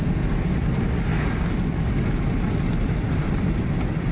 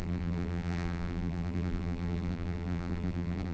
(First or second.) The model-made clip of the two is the second